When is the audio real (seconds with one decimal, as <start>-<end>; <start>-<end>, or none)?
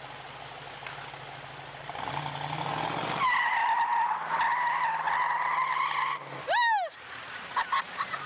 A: 0.0-8.3